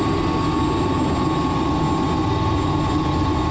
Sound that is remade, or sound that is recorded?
recorded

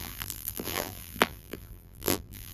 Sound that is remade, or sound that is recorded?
remade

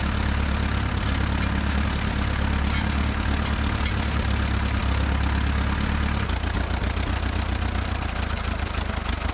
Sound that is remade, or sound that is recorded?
recorded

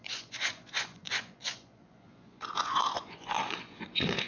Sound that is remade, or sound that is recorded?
remade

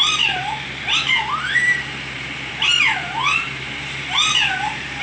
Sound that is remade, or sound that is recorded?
remade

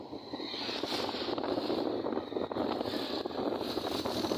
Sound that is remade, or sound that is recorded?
remade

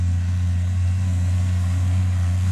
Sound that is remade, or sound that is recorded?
remade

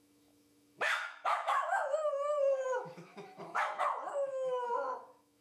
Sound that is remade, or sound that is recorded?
remade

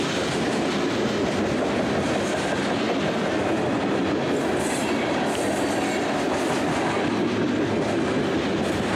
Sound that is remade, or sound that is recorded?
recorded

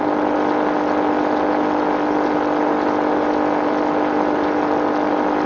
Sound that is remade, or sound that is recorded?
recorded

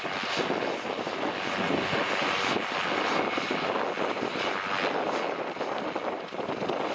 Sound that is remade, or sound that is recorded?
recorded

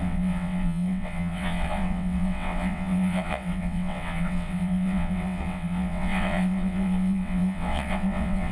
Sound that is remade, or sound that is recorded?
remade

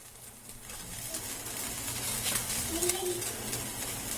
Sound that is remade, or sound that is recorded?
recorded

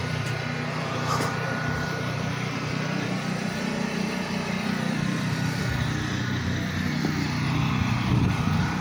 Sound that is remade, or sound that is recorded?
remade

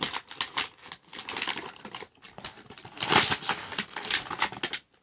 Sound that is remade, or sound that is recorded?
recorded